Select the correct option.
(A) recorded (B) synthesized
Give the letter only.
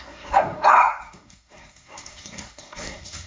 B